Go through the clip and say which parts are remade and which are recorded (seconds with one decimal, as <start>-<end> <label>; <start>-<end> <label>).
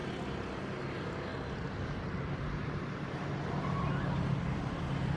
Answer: 0.0-5.2 recorded